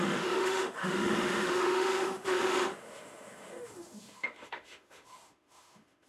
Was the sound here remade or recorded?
remade